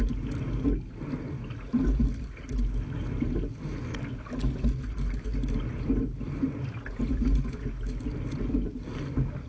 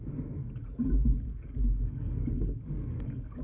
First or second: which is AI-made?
second